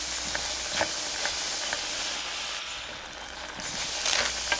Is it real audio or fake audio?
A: real